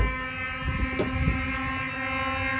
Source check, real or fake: real